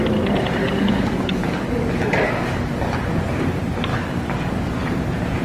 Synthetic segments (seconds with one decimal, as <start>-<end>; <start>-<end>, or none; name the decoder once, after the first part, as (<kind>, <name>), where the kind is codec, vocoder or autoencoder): 0.6-2.8 (codec, DAC); 3.9-4.7